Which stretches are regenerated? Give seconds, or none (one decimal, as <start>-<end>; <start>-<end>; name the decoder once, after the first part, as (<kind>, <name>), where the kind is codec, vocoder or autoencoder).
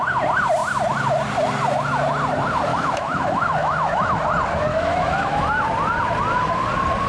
2.7-4.2 (autoencoder, DAC-VAE); 4.7-5.5